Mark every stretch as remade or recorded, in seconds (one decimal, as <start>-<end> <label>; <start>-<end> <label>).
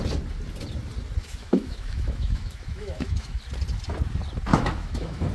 0.0-1.2 recorded; 1.2-3.4 remade; 3.4-4.5 recorded; 4.5-5.3 remade